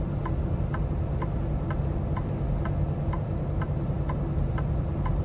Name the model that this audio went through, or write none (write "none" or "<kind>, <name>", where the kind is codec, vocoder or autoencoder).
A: none